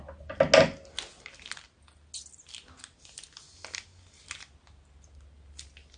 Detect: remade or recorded recorded